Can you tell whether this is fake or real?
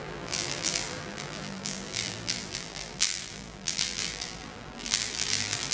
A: fake